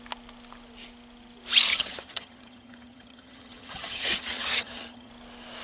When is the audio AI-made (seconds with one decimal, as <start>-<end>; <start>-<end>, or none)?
1.7-5.1